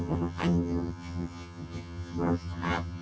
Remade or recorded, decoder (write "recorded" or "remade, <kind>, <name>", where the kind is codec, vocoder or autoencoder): remade, vocoder, HiFi-GAN